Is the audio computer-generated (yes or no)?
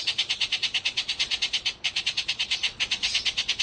yes